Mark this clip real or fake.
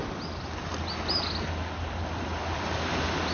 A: real